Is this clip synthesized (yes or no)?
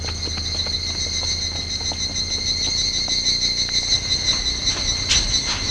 no